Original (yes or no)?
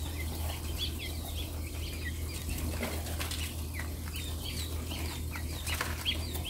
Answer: yes